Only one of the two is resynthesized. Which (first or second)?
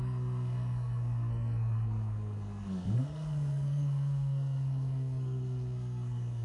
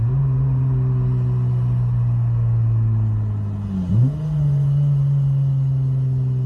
first